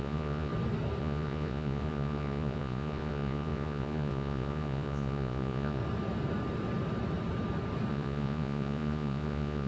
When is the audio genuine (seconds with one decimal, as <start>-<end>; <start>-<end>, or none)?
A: 0.5-1.0; 5.8-7.9